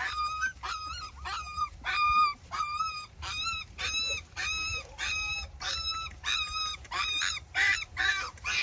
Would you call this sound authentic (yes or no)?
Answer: no